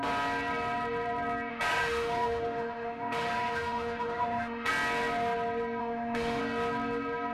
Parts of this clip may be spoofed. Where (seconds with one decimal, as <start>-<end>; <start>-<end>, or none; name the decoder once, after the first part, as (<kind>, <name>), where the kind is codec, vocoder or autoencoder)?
1.5-4.7 (autoencoder, DAC-VAE); 5.8-6.4